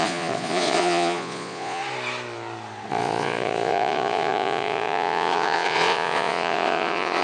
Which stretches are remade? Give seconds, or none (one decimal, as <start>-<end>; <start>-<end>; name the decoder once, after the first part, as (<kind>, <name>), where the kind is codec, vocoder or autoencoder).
0.0-1.8 (vocoder, Vocos); 2.9-7.2